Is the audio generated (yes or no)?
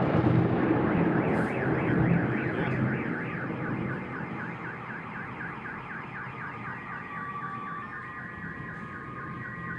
no